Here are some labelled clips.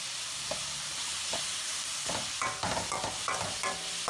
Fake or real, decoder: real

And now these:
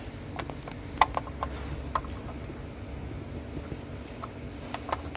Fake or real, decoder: real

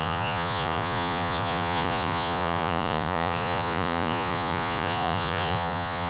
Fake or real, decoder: fake, vocoder, Vocos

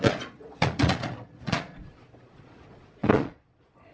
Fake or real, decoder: fake, vocoder, Vocos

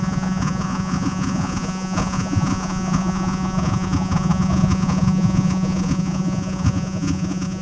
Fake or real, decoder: fake, vocoder, Vocos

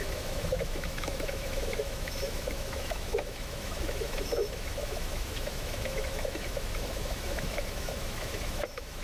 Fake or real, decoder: fake, autoencoder, DAC-VAE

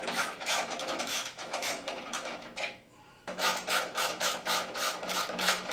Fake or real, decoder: fake, autoencoder, DAC-VAE